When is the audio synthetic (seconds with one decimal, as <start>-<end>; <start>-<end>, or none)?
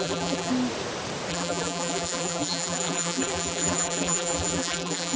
0.0-0.5; 1.3-5.2